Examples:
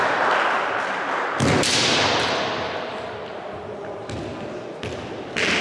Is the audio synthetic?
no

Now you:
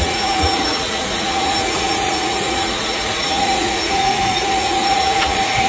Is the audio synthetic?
yes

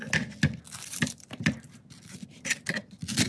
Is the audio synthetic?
no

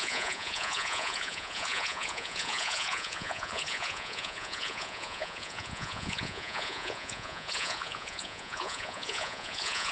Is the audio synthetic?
yes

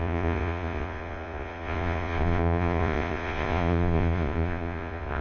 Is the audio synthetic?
yes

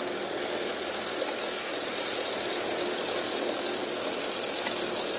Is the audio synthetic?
no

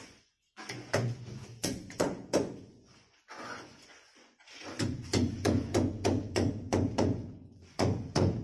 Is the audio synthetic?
yes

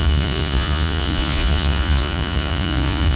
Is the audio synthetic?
yes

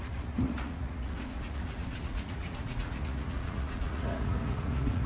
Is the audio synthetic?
yes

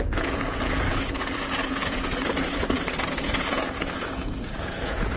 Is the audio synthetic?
yes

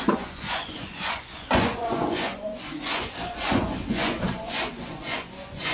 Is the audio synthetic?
yes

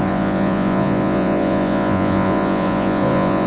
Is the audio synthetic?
yes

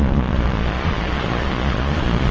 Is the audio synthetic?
yes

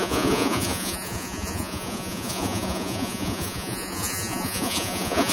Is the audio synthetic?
yes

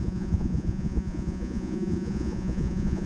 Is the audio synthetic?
yes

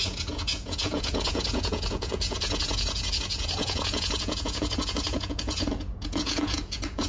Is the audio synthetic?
yes